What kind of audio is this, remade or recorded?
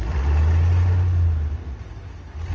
recorded